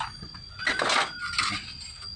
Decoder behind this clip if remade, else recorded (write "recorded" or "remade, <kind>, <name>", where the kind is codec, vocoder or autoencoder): recorded